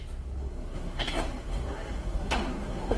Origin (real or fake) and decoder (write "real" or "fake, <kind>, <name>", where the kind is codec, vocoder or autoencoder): fake, codec, SNAC